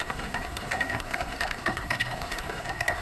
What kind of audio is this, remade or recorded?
remade